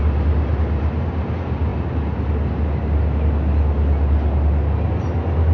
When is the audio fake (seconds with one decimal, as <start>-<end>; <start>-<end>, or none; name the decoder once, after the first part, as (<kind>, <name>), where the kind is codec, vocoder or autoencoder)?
none